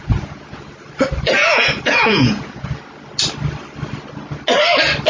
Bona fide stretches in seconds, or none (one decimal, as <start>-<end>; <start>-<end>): 0.7-1.4; 2.8-5.1